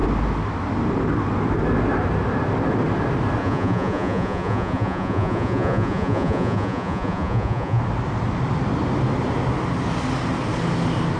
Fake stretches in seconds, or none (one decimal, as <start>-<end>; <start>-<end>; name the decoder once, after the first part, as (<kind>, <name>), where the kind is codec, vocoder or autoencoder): 3.4-7.8 (vocoder, Vocos)